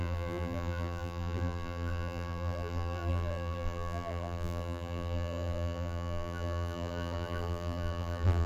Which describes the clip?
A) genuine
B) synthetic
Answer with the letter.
B